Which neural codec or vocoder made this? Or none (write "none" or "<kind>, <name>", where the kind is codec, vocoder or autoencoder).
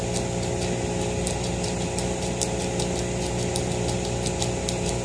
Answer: none